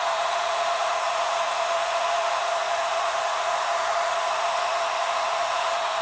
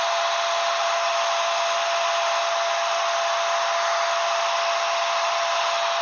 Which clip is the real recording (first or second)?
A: second